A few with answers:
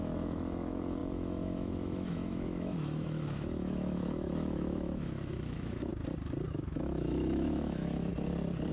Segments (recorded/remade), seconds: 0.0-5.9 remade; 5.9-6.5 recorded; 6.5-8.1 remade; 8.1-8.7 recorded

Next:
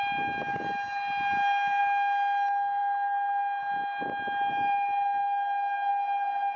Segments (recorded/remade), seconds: 0.0-6.6 recorded

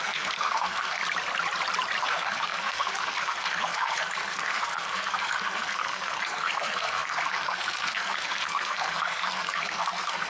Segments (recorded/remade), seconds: 0.0-1.0 remade; 1.0-2.0 recorded; 2.0-10.3 remade

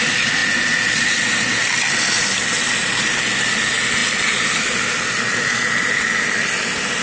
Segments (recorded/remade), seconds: 0.0-7.0 recorded

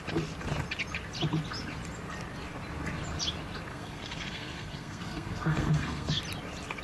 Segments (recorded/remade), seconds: 0.0-3.7 recorded; 3.7-6.2 remade; 6.2-6.8 recorded

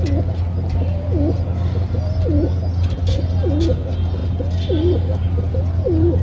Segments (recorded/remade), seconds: 0.0-6.2 recorded

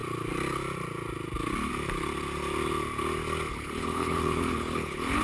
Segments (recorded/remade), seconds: 0.0-3.5 recorded; 3.5-5.2 remade